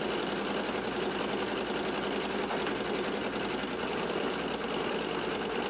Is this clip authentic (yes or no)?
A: yes